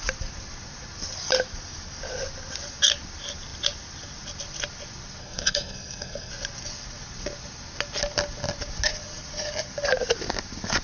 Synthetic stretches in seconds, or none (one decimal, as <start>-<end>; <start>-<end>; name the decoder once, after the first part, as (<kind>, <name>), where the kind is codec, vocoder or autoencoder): 5.2-6.3 (codec, SNAC)